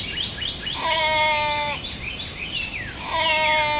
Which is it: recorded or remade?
recorded